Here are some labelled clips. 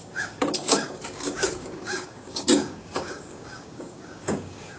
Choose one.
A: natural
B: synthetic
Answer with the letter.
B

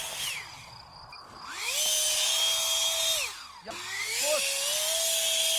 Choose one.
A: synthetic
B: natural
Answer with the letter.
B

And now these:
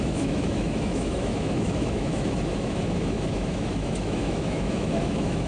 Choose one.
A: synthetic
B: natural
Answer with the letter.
A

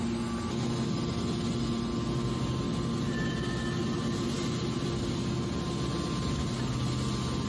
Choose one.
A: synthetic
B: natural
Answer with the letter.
B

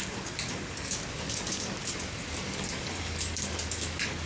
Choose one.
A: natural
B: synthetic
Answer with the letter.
B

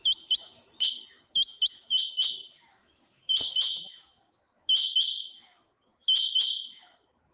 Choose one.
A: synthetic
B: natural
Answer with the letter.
A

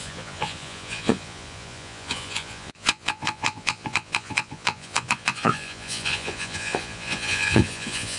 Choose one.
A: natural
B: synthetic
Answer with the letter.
B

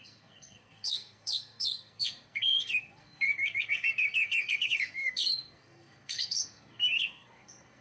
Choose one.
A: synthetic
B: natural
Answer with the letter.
A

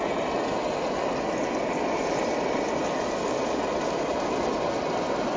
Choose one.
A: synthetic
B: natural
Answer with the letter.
B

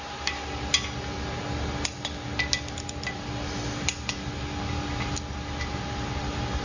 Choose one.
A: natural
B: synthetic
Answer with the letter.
A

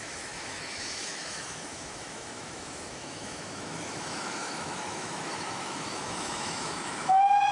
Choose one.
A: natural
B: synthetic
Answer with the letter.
B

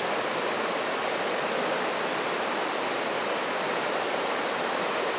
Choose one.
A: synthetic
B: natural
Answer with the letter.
B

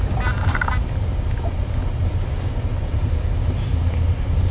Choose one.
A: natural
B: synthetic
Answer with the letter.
A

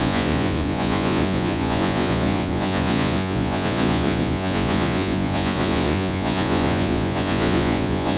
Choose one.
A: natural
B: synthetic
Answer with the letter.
B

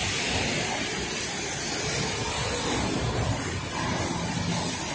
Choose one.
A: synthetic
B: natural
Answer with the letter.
B